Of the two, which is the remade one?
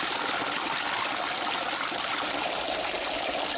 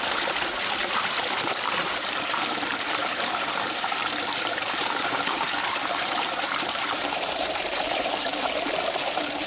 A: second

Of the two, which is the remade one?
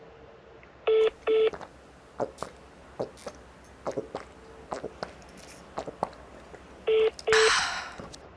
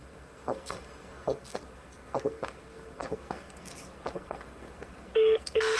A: second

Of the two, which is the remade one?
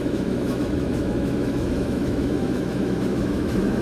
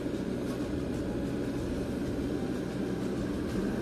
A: first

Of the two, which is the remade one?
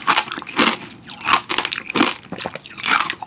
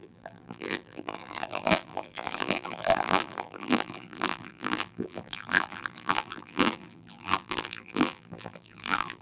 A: second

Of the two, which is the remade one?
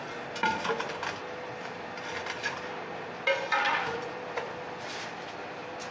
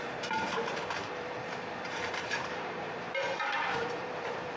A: second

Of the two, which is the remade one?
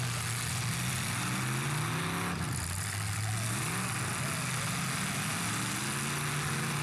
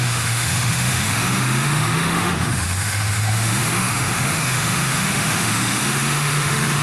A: second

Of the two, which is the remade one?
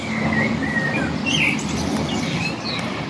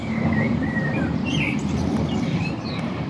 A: second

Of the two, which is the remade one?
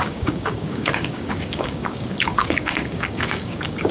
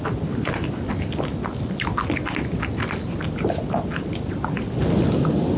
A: first